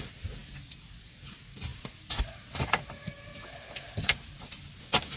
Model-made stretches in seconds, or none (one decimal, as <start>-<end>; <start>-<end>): none